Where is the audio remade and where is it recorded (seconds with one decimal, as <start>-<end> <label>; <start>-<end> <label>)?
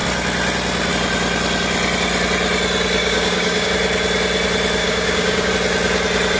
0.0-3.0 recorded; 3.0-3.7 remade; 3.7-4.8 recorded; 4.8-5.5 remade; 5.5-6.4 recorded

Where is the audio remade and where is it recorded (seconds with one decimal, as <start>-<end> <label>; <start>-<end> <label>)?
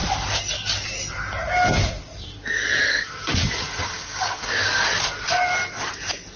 0.0-3.8 recorded; 3.8-4.7 remade; 4.7-6.4 recorded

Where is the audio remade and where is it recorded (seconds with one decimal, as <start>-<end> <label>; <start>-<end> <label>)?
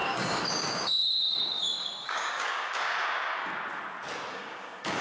0.0-3.5 remade; 3.5-4.3 recorded; 4.3-5.0 remade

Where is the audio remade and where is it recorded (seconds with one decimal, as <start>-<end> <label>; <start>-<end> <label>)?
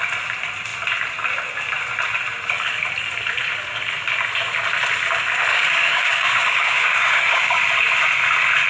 0.0-5.5 recorded; 5.5-7.6 remade; 7.6-8.7 recorded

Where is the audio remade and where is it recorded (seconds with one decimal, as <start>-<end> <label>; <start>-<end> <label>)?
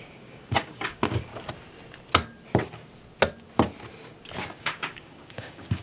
0.0-1.3 remade; 1.3-4.6 recorded; 4.6-5.8 remade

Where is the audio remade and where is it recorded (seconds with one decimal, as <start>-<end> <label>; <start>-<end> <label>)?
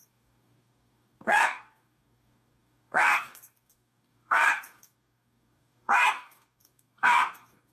0.0-7.7 remade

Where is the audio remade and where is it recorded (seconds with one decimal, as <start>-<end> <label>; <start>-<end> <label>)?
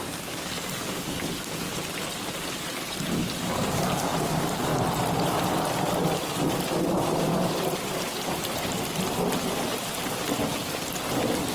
0.0-1.7 remade; 1.7-3.4 recorded; 3.4-4.7 remade; 4.7-6.7 recorded; 6.7-7.3 remade; 7.3-11.5 recorded